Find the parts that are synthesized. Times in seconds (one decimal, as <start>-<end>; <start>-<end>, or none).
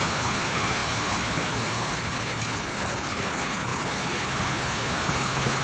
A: 0.0-5.6